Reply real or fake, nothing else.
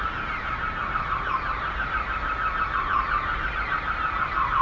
real